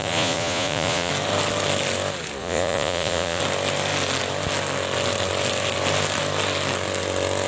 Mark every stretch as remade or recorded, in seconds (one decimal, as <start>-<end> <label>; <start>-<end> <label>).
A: 0.0-1.1 remade; 1.1-2.4 recorded; 2.4-3.4 remade; 3.4-7.5 recorded